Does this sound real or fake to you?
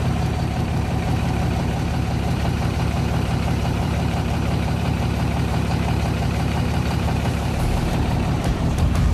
fake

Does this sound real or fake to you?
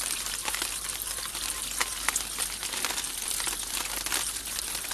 real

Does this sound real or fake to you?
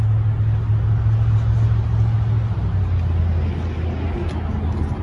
real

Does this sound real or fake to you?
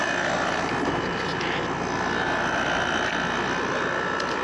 real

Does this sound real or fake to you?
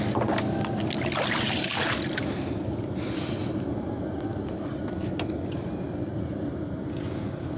real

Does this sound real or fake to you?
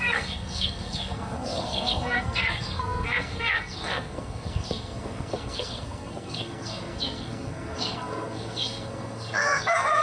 fake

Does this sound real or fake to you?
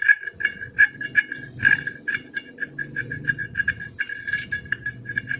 real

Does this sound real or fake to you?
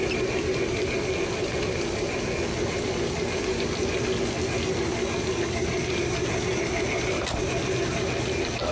real